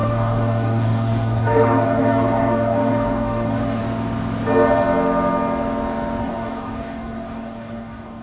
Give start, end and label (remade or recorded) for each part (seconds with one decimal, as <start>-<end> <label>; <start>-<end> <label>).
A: 0.0-3.8 remade; 3.8-6.2 recorded; 6.2-8.2 remade